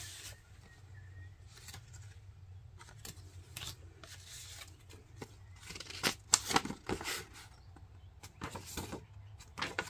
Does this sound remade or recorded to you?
recorded